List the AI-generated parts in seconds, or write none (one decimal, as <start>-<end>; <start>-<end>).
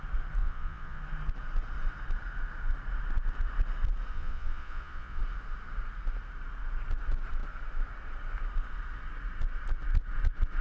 0.4-1.0; 4.1-5.2